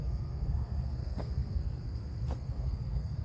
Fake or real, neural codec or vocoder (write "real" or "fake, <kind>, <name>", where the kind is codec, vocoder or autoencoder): fake, codec, SNAC